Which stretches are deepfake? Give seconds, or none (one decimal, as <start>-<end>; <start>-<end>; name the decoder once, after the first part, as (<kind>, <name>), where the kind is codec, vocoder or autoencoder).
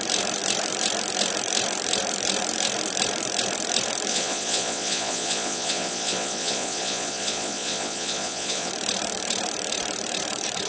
4.1-8.7 (vocoder, Vocos)